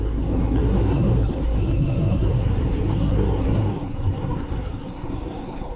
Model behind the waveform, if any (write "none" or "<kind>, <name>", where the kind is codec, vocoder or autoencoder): codec, SNAC